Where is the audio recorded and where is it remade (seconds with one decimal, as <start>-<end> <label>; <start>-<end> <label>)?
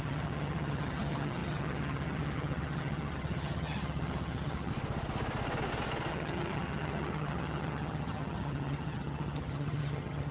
0.0-4.7 remade; 4.7-6.1 recorded; 6.1-10.3 remade